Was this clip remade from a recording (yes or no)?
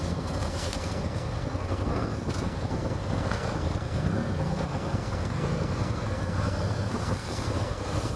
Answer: yes